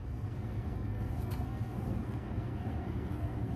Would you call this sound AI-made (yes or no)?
yes